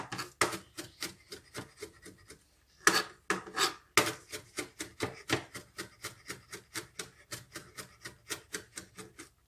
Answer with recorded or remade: recorded